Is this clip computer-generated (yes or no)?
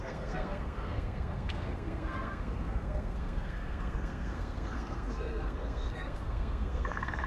yes